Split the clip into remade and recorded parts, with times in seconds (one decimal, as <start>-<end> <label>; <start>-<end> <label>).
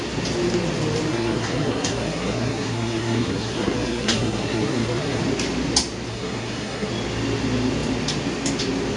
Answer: 0.0-1.1 recorded; 1.1-5.2 remade; 5.2-6.1 recorded; 6.1-6.9 remade; 6.9-9.0 recorded